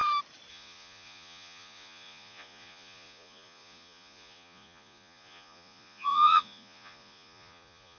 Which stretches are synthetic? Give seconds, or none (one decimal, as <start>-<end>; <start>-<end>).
0.5-8.0